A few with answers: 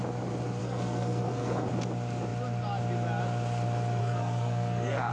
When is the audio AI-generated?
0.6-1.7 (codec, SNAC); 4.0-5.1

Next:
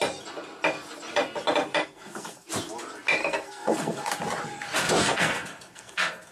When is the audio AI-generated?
1.8-2.5 (codec, SNAC); 3.2-4.1; 5.0-6.3